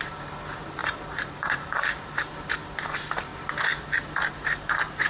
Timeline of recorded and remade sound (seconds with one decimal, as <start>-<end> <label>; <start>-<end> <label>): 0.0-3.3 remade; 3.3-4.3 recorded; 4.3-5.1 remade